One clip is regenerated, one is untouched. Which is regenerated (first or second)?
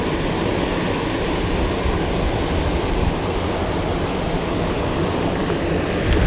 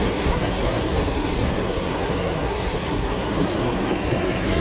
second